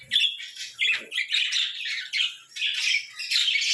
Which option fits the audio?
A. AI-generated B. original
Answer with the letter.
B